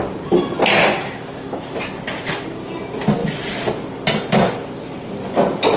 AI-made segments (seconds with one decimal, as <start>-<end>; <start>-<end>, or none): 0.9-1.7